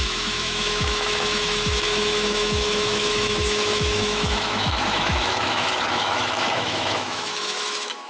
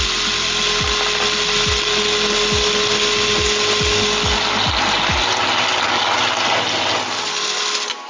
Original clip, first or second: second